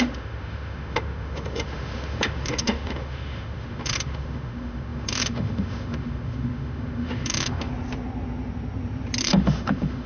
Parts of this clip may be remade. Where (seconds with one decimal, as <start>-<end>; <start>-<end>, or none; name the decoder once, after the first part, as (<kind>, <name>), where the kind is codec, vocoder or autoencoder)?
0.0-7.7 (autoencoder, DAC-VAE); 9.2-10.1